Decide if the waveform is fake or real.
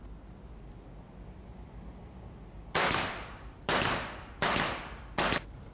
real